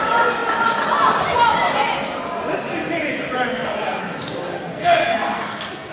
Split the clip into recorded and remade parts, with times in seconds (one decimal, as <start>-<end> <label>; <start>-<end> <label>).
0.0-3.5 recorded; 3.5-5.9 remade